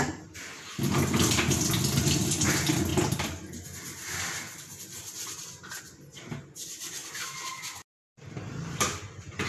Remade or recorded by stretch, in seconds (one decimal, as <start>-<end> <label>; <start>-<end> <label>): 0.0-2.9 recorded; 2.9-5.8 remade; 5.8-9.5 recorded